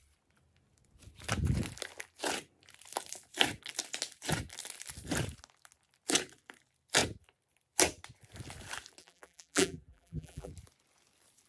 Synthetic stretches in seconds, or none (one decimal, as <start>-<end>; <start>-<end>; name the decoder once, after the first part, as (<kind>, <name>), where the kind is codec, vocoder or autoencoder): 9.0-10.5 (vocoder, BigVGAN v2)